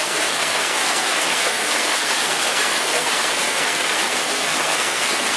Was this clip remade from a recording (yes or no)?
yes